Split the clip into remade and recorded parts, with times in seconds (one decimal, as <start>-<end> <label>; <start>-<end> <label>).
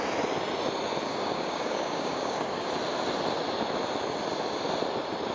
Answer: 0.0-1.1 recorded; 1.1-2.7 remade; 2.7-5.3 recorded